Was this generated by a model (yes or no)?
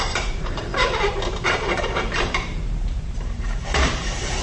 yes